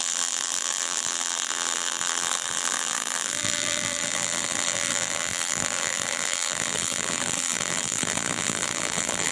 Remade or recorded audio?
remade